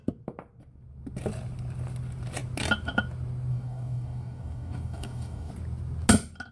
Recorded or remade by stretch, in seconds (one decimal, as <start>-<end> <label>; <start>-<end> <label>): 0.0-3.5 recorded; 3.5-5.5 remade; 5.5-6.5 recorded